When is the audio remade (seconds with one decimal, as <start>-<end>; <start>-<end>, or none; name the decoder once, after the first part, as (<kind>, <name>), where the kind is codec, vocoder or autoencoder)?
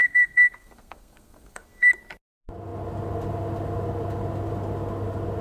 0.0-1.9 (codec, SNAC)